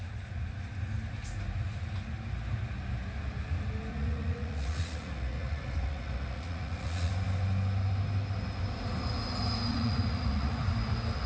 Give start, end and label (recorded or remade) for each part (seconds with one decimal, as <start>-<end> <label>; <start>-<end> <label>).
0.0-3.9 recorded; 3.9-7.1 remade; 7.1-9.7 recorded; 9.7-10.6 remade; 10.6-11.3 recorded